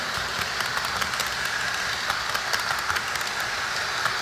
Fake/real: real